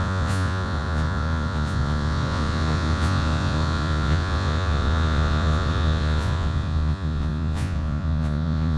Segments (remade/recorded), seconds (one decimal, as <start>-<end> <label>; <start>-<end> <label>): 0.0-8.8 remade